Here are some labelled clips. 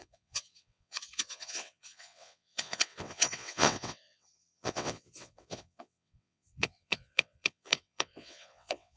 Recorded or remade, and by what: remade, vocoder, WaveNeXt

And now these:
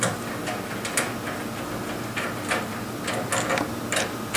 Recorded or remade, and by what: recorded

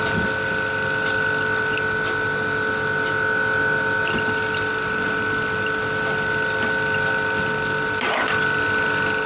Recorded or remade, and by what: recorded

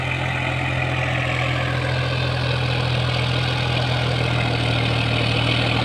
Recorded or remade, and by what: recorded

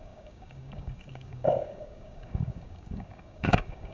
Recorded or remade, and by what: remade, codec, DAC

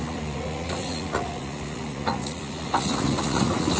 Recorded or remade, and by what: remade, vocoder, Vocos